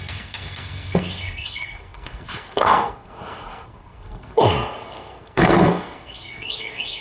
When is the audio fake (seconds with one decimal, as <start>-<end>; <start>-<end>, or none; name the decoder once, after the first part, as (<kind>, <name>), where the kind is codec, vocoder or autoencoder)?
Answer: 0.0-7.0 (codec, SNAC)